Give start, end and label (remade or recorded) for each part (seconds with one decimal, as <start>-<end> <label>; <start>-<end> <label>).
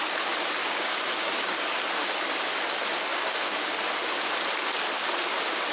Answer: 0.0-0.6 recorded; 0.6-1.6 remade; 1.6-3.1 recorded; 3.1-3.7 remade; 3.7-5.7 recorded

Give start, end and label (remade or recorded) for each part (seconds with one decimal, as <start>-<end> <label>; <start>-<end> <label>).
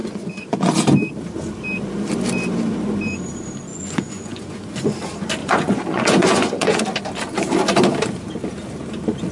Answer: 0.0-0.7 remade; 0.7-3.7 recorded; 3.7-4.9 remade; 4.9-5.4 recorded; 5.4-6.8 remade; 6.8-9.3 recorded